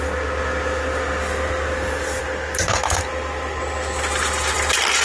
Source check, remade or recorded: recorded